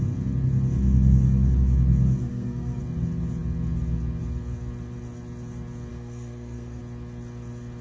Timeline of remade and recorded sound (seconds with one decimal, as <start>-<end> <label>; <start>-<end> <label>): 0.0-2.2 recorded; 2.2-2.8 remade; 2.8-5.9 recorded; 5.9-6.8 remade; 6.8-7.8 recorded